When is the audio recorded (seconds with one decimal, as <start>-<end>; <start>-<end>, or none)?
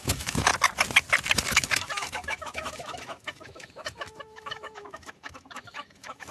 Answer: 0.5-1.5